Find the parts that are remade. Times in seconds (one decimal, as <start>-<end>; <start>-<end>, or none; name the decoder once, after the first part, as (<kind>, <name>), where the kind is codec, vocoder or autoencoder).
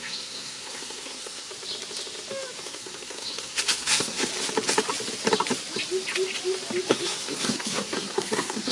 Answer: 0.0-1.5 (codec, SNAC); 2.6-4.3; 6.9-8.7